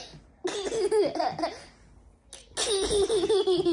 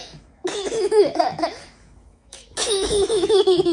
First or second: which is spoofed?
second